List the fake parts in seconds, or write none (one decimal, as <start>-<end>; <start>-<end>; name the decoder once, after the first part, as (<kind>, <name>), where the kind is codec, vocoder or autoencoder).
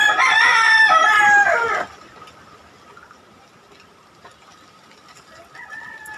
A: 1.0-2.0 (vocoder, BigVGAN v2)